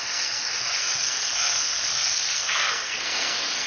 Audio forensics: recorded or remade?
remade